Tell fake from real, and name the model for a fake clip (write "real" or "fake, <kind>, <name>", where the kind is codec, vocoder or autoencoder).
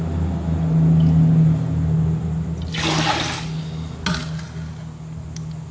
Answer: real